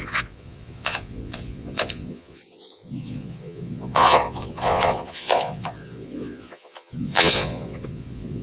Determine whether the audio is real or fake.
fake